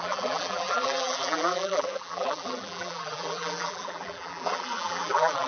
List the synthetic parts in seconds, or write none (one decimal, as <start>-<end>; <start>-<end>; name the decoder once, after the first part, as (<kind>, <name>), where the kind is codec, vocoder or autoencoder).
0.0-5.5 (vocoder, BigVGAN v2)